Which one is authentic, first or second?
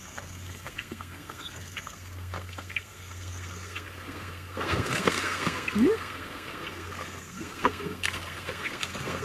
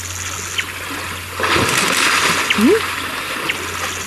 second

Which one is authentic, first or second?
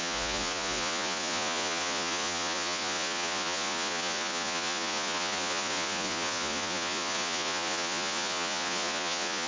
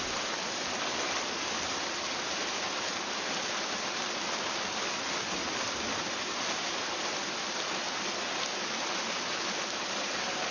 second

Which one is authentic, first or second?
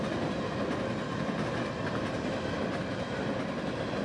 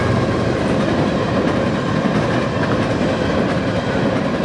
first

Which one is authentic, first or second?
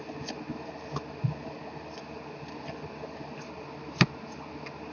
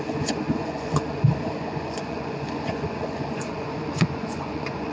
first